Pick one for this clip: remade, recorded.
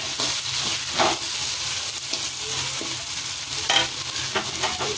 recorded